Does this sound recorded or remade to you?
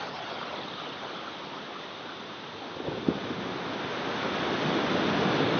recorded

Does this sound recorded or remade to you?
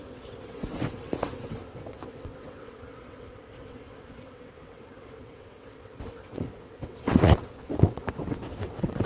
remade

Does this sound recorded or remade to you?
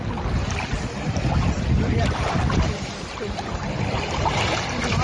recorded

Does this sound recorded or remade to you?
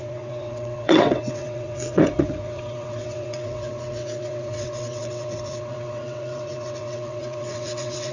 remade